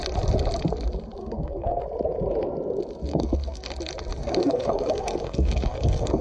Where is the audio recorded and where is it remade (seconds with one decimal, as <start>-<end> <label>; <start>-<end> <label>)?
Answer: 0.0-1.2 recorded; 1.2-1.8 remade; 1.8-3.1 recorded; 3.1-3.7 remade; 3.7-4.2 recorded; 4.2-6.2 remade